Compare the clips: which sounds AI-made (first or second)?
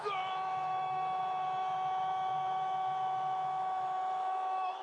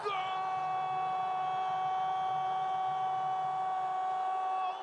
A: first